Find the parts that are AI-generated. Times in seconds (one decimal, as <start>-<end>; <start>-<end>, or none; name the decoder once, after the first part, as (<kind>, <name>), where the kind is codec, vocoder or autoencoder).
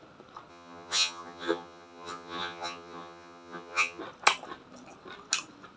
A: 0.5-4.0 (vocoder, HiFi-GAN)